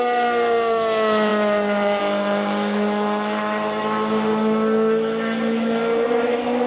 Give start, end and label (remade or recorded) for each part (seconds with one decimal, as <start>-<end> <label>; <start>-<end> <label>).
0.0-6.7 remade